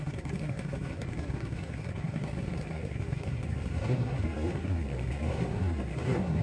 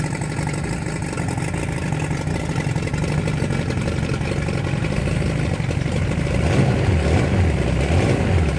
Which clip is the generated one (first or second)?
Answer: first